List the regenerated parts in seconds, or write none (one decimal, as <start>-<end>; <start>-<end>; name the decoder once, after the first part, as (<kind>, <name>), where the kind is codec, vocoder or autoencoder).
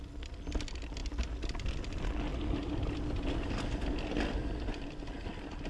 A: none